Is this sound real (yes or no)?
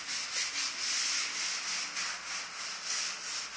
yes